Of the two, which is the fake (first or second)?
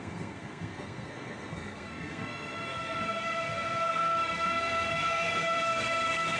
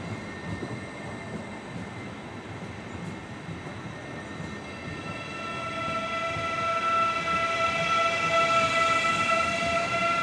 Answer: first